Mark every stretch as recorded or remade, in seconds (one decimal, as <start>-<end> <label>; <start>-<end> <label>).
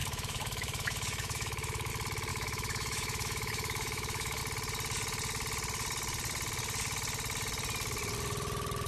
0.0-1.9 remade; 1.9-2.3 recorded; 2.3-4.4 remade; 4.4-8.9 recorded